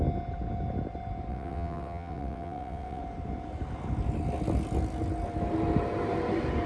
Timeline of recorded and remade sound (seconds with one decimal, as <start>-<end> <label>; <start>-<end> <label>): 0.0-1.3 recorded; 1.3-3.0 remade; 3.0-6.7 recorded